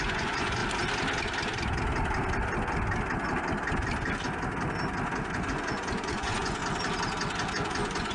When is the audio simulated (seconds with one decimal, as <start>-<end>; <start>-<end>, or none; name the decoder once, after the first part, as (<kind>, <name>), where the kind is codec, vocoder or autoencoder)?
0.0-0.6 (vocoder, Vocos); 5.5-6.6; 7.5-8.1

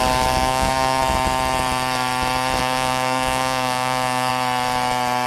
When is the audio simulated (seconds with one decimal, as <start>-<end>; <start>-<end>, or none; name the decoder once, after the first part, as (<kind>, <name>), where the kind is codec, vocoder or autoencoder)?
0.0-1.0 (codec, DAC); 2.6-4.3

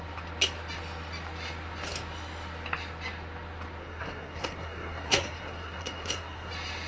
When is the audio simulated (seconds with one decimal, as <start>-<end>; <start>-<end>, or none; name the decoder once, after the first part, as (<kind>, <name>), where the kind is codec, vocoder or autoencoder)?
3.8-6.5 (codec, SNAC)

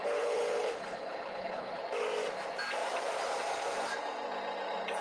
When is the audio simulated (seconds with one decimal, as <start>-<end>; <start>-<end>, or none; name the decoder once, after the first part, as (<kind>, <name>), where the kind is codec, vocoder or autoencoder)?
0.0-1.8 (codec, HILCodec)

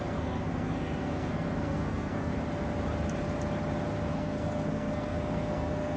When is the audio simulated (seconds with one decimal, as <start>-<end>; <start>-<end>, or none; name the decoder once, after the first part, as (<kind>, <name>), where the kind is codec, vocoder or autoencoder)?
0.0-2.3 (codec, SNAC); 4.1-6.0

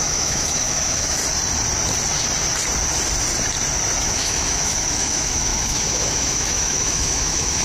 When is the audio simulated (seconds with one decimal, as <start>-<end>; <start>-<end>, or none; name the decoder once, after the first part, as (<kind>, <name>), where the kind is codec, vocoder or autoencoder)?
0.0-1.2 (autoencoder, DAC-VAE); 4.0-7.6

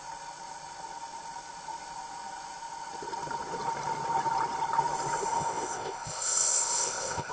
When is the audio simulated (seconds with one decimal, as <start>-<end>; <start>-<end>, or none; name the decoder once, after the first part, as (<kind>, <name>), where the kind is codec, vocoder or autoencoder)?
5.3-7.3 (codec, ZipCodec)

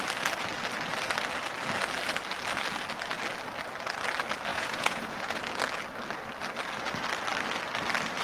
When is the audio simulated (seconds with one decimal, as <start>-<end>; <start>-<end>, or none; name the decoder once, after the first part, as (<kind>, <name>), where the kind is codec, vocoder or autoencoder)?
4.5-5.4 (vocoder, Vocos)